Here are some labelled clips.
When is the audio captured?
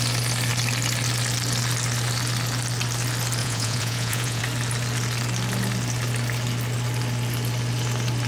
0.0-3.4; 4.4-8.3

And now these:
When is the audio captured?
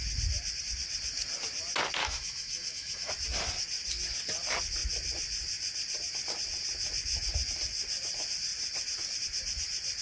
0.0-2.0; 3.1-10.0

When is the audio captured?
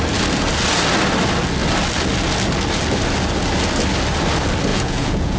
0.0-4.7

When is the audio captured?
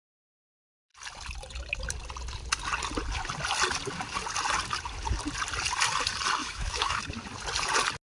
0.0-6.4; 7.0-8.2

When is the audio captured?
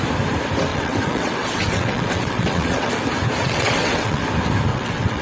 0.0-0.7; 2.9-3.4; 4.2-4.7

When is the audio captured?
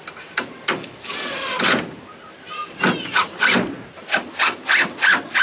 0.0-5.4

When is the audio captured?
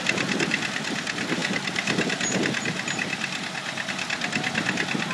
0.0-5.1